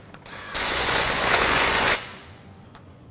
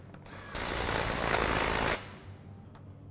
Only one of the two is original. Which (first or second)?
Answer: second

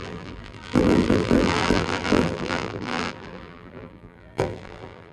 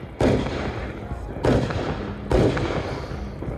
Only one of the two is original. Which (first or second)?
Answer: second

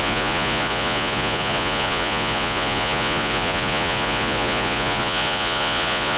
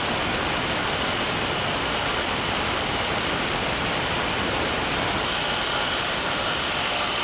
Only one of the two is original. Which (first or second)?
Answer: second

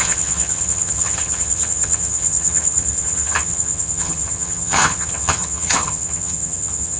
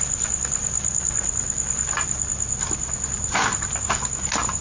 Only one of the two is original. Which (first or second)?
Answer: second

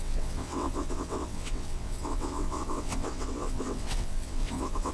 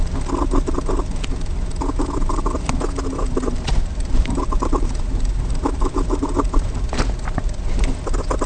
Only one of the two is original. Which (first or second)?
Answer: second